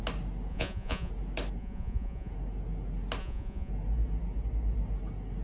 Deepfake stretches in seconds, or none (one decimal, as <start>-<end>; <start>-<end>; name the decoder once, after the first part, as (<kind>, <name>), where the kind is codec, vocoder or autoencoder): 0.5-1.1 (vocoder, Vocos); 1.6-2.3; 3.2-3.7